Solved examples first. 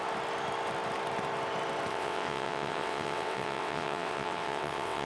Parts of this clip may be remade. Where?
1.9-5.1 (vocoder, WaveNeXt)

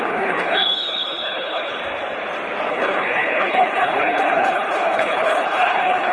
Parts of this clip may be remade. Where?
0.0-1.8 (codec, HILCodec); 2.7-6.1

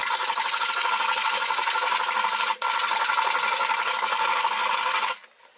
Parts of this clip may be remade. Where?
none

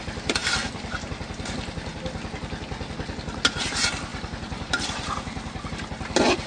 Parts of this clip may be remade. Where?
0.4-1.1 (vocoder, BigVGAN v2); 4.1-5.7

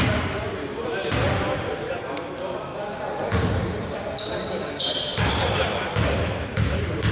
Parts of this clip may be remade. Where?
2.7-4.7 (vocoder, BigVGAN v2)

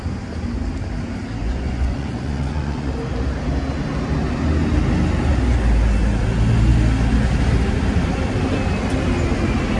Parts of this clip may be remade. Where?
1.4-2.9 (vocoder, Vocos)

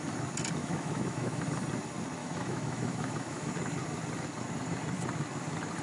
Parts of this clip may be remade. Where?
0.6-1.4 (autoencoder, DAC-VAE); 2.2-3.5